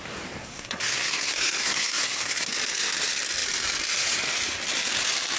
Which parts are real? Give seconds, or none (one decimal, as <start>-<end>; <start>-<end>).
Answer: 0.0-0.4; 2.5-5.4